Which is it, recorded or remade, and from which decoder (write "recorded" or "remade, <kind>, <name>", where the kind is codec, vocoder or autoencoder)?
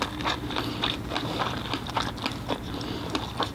recorded